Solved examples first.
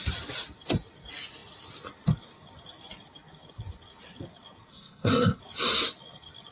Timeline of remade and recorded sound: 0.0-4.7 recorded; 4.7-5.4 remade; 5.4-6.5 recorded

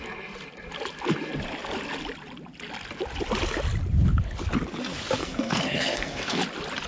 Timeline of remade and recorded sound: 0.0-5.2 recorded; 5.2-6.4 remade; 6.4-6.9 recorded

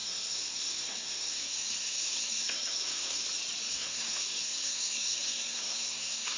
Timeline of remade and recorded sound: 0.0-3.2 remade; 3.2-3.7 recorded; 3.7-6.4 remade

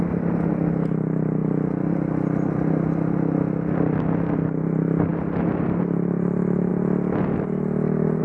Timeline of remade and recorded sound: 0.0-8.2 recorded

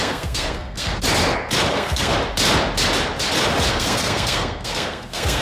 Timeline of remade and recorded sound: 0.0-0.9 remade; 0.9-1.7 recorded; 1.7-2.1 remade; 2.1-3.7 recorded; 3.7-5.4 remade

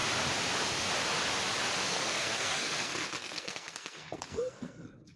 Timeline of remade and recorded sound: 0.0-1.9 recorded; 1.9-5.2 remade

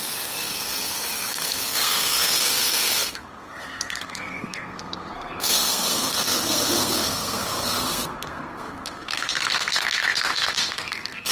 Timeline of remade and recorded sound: 0.0-11.3 remade